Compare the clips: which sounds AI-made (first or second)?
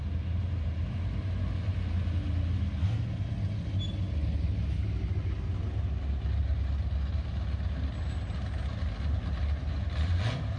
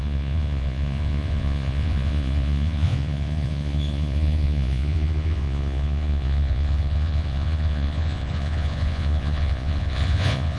second